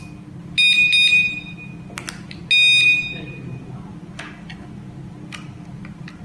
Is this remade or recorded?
recorded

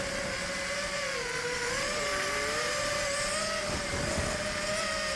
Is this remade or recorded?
recorded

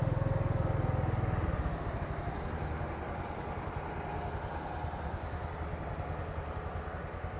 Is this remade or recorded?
recorded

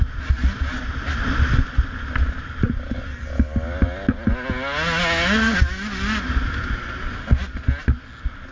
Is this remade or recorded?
recorded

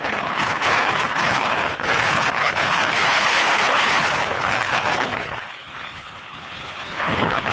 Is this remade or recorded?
remade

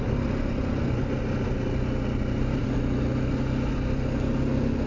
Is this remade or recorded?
recorded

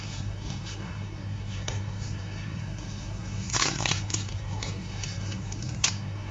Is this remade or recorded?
remade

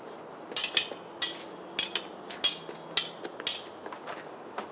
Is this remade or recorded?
recorded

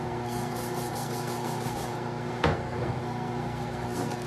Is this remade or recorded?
remade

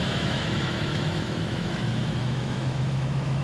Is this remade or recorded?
remade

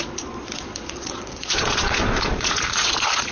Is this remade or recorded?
remade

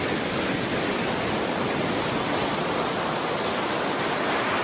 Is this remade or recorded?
recorded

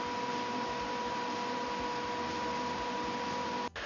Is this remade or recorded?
recorded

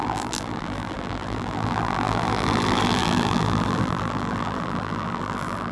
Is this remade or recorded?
remade